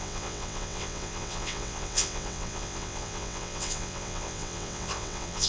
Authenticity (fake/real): fake